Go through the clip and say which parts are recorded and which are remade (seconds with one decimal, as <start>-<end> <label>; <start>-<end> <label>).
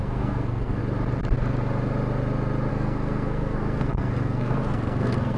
0.0-0.8 remade; 0.8-2.7 recorded; 2.7-5.4 remade